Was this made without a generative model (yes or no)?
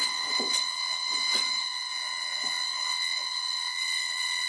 no